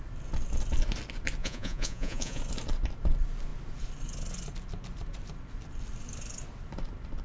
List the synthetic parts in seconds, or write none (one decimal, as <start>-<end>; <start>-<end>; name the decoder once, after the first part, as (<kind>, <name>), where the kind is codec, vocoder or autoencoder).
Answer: 1.4-2.4 (vocoder, Vocos)